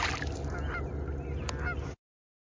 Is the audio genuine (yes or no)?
yes